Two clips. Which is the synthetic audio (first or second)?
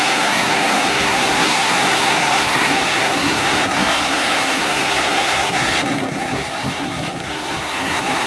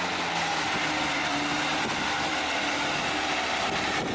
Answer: first